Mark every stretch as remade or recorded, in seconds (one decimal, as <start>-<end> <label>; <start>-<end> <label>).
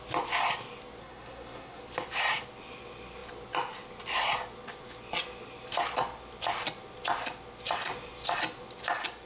0.0-1.0 recorded; 1.0-1.8 remade; 1.8-9.3 recorded